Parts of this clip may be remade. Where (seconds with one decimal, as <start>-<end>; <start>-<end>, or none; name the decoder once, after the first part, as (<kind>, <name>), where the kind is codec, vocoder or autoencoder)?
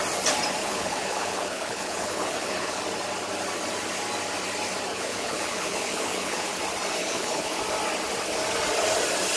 0.6-2.8 (codec, HILCodec); 4.9-6.6; 7.0-7.6